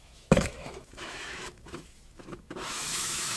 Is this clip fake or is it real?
fake